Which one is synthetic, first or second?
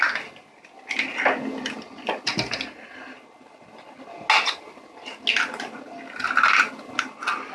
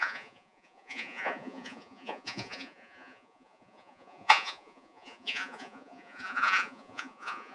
second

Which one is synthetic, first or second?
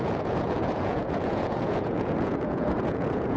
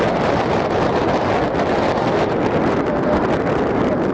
first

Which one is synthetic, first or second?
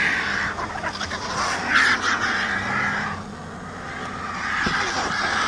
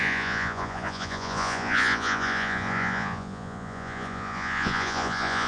second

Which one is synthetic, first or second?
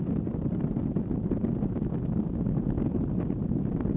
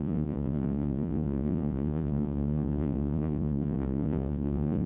second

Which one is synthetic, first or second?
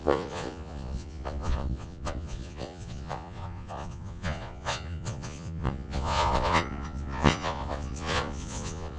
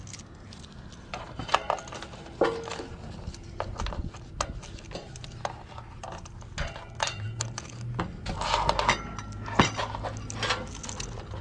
first